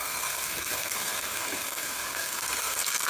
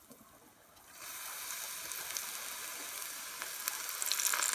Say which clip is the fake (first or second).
first